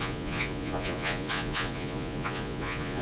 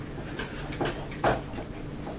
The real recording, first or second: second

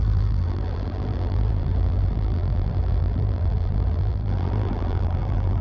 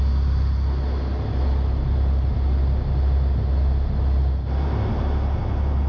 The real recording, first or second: second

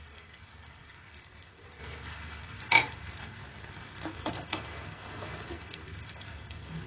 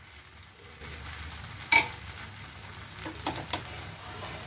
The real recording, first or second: second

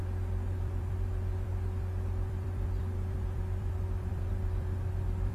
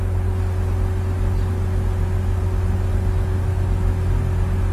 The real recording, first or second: second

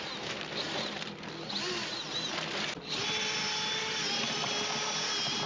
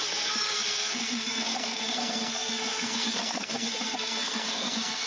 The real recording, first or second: first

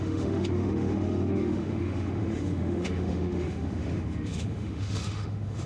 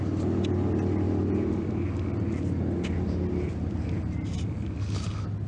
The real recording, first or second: second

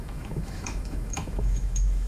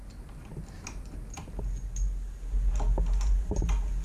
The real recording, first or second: second